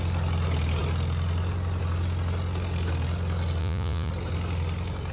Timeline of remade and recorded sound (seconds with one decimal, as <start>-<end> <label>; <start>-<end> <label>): 0.0-3.6 recorded; 3.6-4.1 remade; 4.1-5.1 recorded